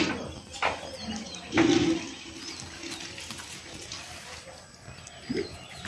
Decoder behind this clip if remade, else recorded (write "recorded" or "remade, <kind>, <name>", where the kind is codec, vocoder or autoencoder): recorded